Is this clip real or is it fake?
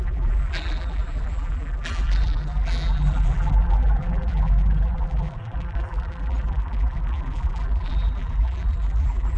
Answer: fake